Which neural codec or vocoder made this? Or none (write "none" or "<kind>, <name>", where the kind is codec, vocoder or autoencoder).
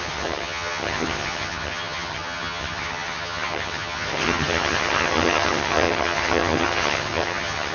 vocoder, HiFi-GAN